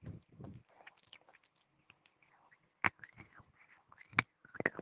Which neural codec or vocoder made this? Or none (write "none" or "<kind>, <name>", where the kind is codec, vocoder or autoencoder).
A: none